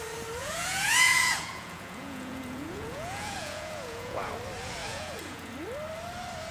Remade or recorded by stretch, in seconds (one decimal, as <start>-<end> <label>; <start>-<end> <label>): 0.0-0.4 recorded; 0.4-4.3 remade; 4.3-4.8 recorded; 4.8-5.5 remade; 5.5-6.5 recorded